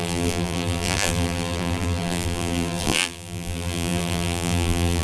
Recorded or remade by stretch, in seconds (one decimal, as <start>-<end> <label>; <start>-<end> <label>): 0.0-5.0 remade